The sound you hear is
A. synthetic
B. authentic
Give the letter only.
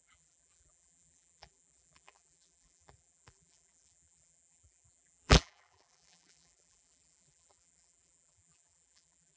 A